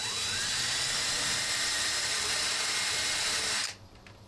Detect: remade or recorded remade